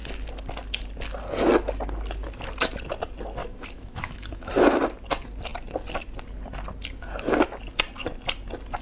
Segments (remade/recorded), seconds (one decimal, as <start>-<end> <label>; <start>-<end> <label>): 0.0-3.4 recorded; 3.4-4.5 remade; 4.5-8.8 recorded